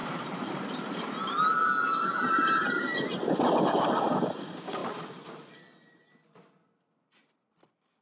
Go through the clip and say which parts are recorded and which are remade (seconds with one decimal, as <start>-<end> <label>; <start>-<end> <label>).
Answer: 0.0-4.0 remade; 4.0-4.8 recorded; 4.8-5.5 remade; 5.5-8.0 recorded